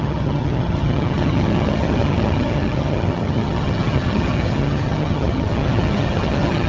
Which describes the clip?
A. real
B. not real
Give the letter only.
B